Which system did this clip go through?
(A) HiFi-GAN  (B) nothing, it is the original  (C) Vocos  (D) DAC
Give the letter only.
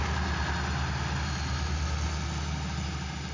B